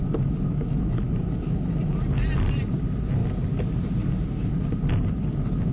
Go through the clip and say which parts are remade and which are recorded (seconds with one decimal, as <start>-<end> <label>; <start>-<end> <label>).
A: 0.0-5.7 recorded